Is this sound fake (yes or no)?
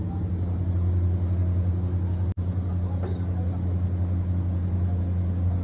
no